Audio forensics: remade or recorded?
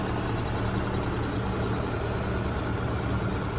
recorded